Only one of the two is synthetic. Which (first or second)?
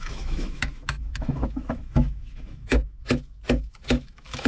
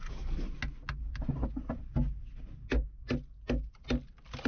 first